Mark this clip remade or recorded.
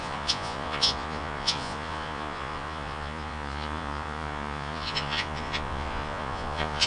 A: remade